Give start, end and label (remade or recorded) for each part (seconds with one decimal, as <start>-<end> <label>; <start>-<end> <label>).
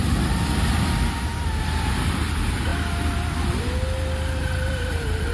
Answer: 0.0-4.4 recorded; 4.4-5.3 remade